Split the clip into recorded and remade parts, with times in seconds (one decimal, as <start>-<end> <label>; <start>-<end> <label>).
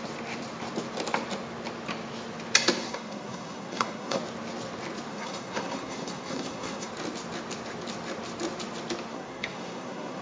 0.0-2.8 recorded; 2.8-4.2 remade; 4.2-5.1 recorded; 5.1-6.9 remade; 6.9-9.1 recorded; 9.1-10.2 remade